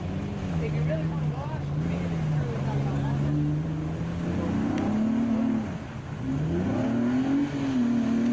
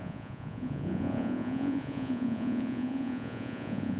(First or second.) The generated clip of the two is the second